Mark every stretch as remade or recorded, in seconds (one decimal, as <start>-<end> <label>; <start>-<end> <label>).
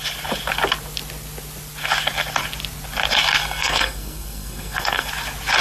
0.0-3.4 recorded; 3.4-5.1 remade; 5.1-5.6 recorded